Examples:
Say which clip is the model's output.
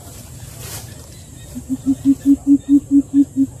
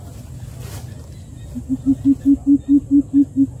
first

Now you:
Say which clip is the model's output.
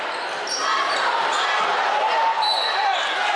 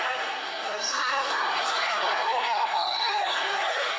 second